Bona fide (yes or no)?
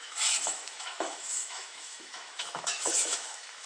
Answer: no